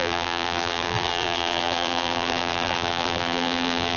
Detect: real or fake fake